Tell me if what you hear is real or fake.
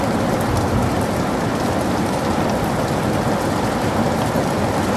real